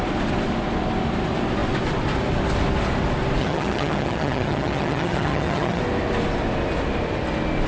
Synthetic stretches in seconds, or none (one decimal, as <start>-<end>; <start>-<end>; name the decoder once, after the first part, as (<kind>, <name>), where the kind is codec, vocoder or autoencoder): 3.4-5.8 (vocoder, HiFi-GAN)